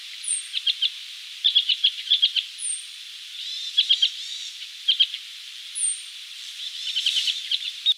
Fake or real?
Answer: fake